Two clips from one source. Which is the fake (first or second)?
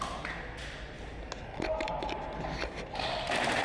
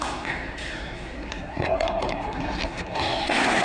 second